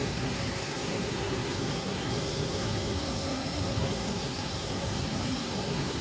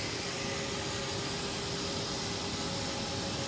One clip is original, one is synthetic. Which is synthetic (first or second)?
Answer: first